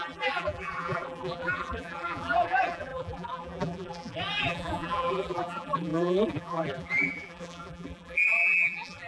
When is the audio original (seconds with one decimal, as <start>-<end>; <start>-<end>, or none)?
none